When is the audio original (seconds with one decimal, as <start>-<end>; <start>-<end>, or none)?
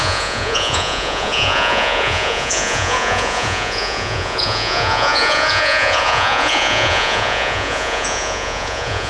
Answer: none